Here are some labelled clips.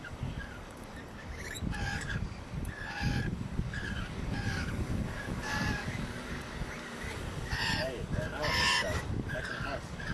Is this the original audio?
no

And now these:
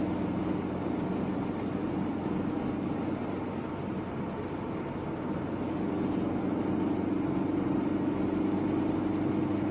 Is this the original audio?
yes